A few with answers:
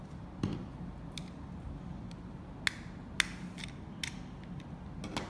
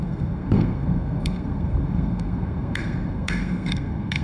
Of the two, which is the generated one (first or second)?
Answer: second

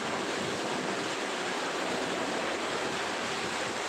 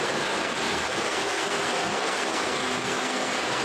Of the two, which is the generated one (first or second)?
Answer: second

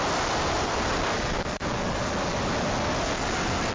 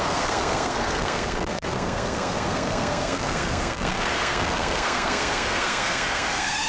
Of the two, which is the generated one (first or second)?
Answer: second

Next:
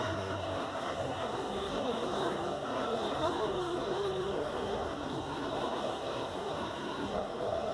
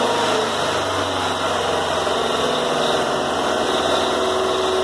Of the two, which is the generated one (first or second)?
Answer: first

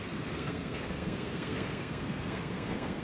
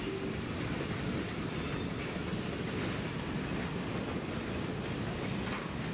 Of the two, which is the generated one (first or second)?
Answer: first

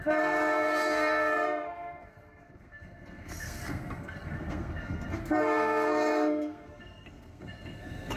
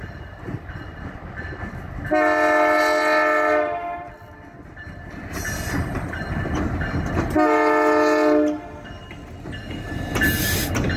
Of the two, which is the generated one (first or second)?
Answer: first